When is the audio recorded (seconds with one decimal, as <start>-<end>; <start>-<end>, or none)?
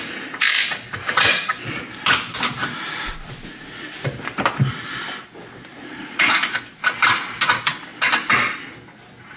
0.0-5.7; 6.3-9.4